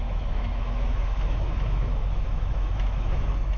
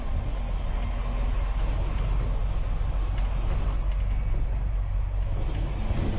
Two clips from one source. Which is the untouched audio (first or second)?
second